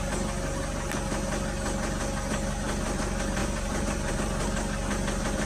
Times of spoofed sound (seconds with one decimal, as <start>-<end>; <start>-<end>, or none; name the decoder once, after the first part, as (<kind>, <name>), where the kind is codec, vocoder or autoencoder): 3.4-4.1 (vocoder, BigVGAN v2)